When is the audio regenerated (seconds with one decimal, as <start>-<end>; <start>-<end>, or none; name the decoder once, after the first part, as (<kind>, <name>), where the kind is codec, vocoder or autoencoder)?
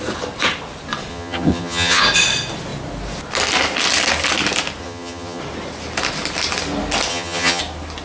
1.1-2.0 (vocoder, HiFi-GAN); 4.8-5.4; 7.1-7.6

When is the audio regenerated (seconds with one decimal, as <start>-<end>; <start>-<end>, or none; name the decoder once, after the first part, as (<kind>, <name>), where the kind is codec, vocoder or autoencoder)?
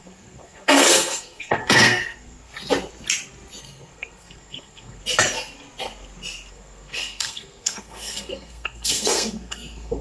0.0-2.5 (codec, SNAC); 3.6-5.0; 6.5-10.0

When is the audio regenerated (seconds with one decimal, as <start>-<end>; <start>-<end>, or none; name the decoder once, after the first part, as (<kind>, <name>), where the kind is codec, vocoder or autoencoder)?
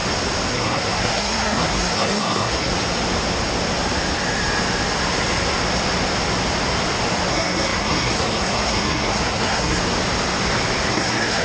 0.5-2.7 (codec, SNAC); 7.3-9.8; 10.9-11.4